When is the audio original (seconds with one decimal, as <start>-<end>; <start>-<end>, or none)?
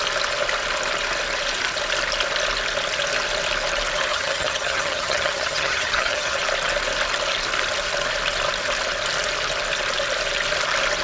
0.0-4.1; 6.4-11.0